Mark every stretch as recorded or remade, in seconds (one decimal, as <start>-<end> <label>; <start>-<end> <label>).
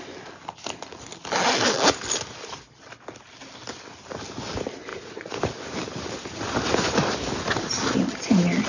0.0-4.9 recorded; 4.9-5.4 remade; 5.4-8.7 recorded